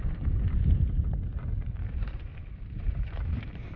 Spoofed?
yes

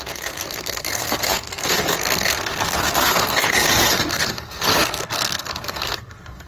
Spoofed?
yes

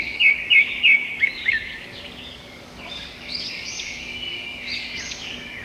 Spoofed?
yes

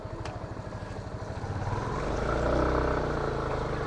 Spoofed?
no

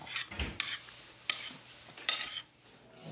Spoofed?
no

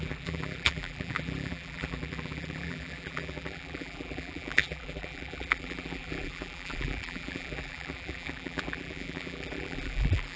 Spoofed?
yes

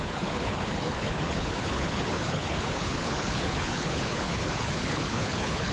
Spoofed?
yes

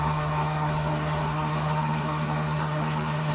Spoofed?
yes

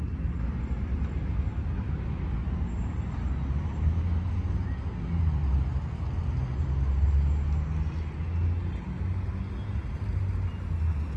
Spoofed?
no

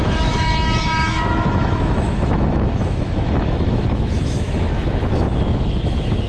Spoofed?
yes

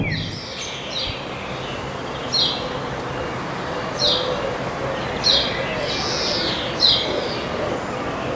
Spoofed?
no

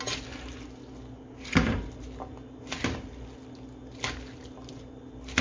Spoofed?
no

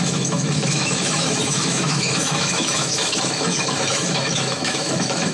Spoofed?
yes